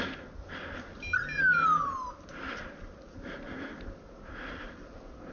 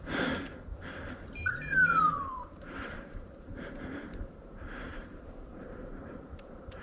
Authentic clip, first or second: first